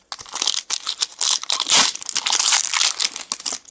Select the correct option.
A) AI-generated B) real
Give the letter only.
B